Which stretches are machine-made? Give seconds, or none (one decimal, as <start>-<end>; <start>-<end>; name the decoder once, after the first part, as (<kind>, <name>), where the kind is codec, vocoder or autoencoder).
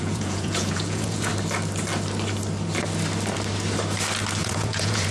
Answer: 0.0-1.3 (vocoder, Vocos); 4.4-5.1